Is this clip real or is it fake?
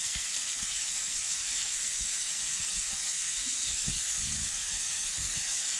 fake